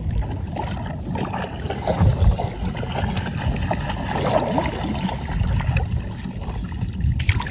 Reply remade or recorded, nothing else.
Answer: recorded